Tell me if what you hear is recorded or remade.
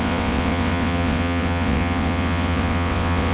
remade